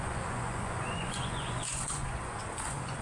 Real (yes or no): no